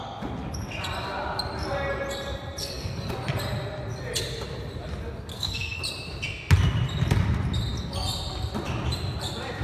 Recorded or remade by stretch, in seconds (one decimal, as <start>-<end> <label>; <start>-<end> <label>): 0.0-2.6 recorded; 2.6-3.1 remade; 3.1-5.3 recorded; 5.3-5.8 remade; 5.8-9.6 recorded